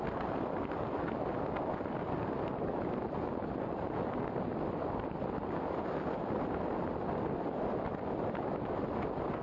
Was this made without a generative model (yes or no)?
yes